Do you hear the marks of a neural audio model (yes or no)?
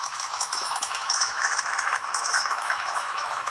yes